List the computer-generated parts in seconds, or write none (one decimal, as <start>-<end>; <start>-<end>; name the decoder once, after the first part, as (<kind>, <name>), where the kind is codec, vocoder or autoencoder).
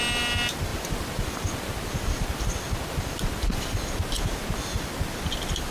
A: none